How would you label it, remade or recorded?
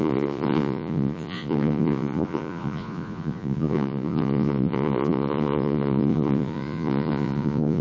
remade